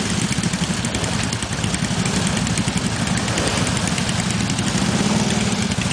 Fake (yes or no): no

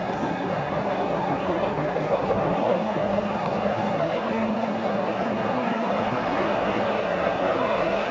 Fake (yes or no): yes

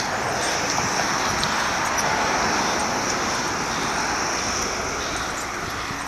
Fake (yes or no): no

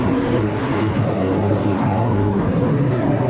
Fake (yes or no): yes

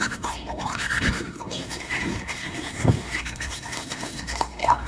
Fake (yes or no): yes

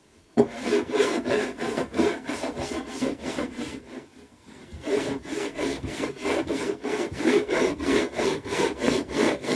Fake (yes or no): yes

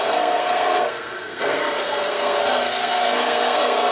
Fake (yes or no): yes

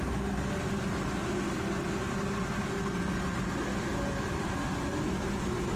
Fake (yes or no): no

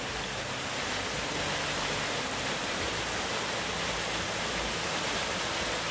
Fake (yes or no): no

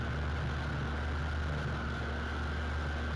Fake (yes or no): no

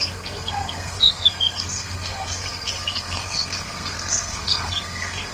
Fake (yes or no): yes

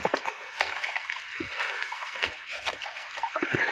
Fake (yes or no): yes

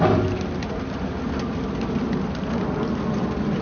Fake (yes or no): no